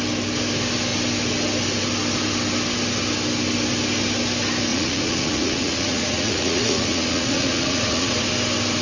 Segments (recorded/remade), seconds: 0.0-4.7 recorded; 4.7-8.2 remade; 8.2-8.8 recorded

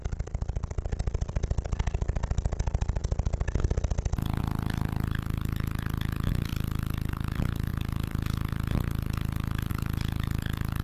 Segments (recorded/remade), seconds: 0.0-3.0 remade; 3.0-4.4 recorded; 4.4-6.5 remade; 6.5-7.1 recorded; 7.1-10.8 remade

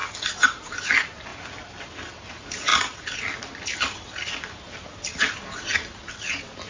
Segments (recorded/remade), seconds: 0.0-0.8 recorded; 0.8-1.3 remade; 1.3-2.0 recorded; 2.0-2.7 remade; 2.7-4.5 recorded; 4.5-6.7 remade

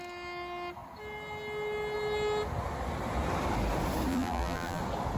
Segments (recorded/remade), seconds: 0.0-4.1 recorded; 4.1-4.8 remade; 4.8-5.2 recorded

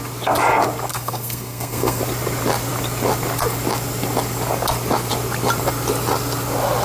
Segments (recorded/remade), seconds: 0.0-0.9 recorded; 0.9-2.0 remade; 2.0-6.8 recorded

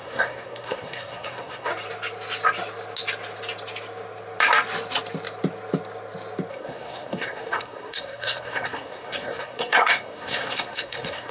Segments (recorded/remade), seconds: 0.0-1.7 remade; 1.7-6.5 recorded; 6.5-11.3 remade

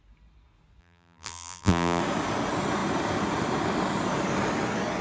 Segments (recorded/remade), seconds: 0.0-0.8 recorded; 0.8-2.0 remade; 2.0-5.0 recorded

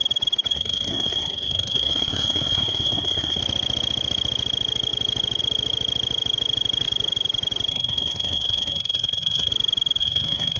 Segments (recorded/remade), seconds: 0.0-0.5 recorded; 0.5-3.4 remade; 3.4-7.7 recorded; 7.7-9.5 remade; 9.5-10.0 recorded; 10.0-10.6 remade